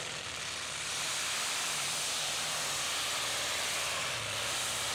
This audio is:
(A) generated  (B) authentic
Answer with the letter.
A